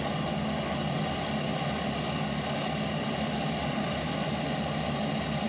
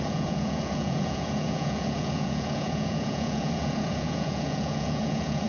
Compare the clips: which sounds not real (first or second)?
second